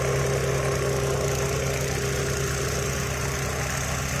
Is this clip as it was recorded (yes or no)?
yes